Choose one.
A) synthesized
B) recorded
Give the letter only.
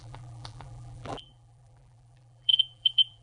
A